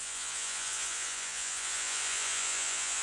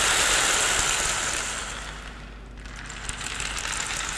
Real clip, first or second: second